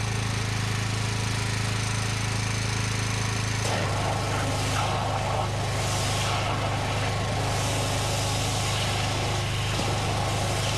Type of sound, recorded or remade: recorded